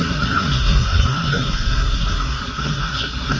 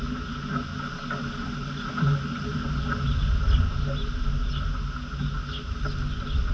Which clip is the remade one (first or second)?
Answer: first